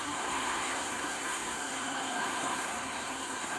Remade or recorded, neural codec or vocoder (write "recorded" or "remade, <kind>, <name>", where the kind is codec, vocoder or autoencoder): remade, codec, SNAC